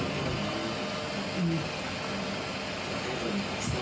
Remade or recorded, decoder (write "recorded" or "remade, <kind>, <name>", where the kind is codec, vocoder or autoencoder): recorded